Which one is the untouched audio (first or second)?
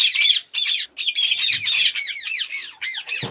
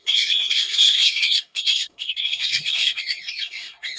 first